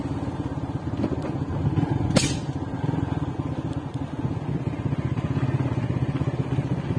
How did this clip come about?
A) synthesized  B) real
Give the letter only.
B